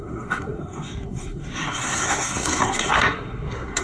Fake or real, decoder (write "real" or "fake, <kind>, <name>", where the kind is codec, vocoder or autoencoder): fake, codec, SNAC